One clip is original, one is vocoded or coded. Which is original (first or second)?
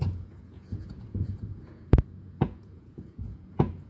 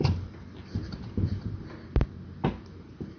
second